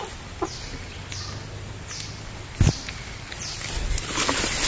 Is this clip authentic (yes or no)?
yes